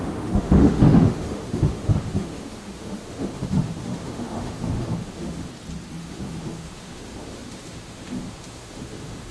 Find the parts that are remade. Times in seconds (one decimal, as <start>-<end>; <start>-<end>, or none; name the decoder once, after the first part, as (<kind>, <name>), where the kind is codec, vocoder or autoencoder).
0.0-5.5 (autoencoder, DAC-VAE); 6.0-9.3